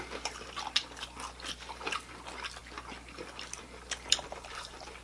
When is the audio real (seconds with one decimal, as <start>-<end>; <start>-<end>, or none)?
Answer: 0.0-5.0